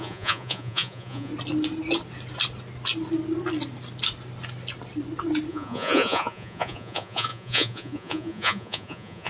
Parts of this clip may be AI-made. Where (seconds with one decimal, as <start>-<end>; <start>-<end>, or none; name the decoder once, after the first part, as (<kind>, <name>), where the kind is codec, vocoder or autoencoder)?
0.0-1.3 (vocoder, Vocos); 5.5-9.3

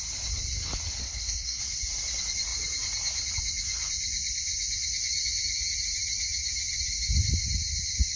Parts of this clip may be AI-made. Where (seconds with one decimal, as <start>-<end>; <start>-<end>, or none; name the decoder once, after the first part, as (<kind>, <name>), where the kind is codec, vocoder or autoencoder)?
1.0-1.6 (codec, SNAC)

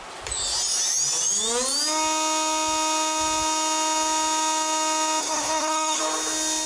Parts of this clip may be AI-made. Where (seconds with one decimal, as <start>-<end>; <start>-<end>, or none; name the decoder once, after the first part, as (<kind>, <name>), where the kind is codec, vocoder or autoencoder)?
5.2-6.0 (codec, SNAC)

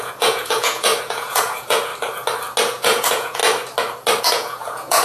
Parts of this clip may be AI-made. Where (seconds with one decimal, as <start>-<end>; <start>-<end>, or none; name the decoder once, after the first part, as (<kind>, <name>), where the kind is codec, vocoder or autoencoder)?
0.0-1.9 (vocoder, Vocos); 2.6-3.4; 4.2-5.0

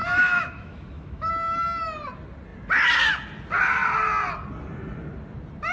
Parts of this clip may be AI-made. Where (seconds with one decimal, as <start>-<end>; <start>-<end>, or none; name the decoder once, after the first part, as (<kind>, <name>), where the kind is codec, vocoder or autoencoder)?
0.0-1.3 (autoencoder, DAC-VAE)

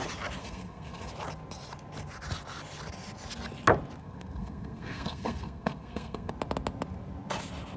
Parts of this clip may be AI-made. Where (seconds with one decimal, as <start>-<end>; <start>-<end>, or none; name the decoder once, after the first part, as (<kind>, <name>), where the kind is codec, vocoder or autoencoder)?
0.4-1.1 (codec, SNAC); 4.0-6.3